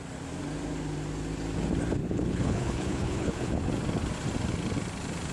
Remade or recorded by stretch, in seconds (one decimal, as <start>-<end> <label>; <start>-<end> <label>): 0.0-2.0 recorded; 2.0-3.7 remade; 3.7-5.3 recorded